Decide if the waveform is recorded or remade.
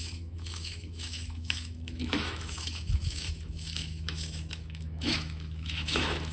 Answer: remade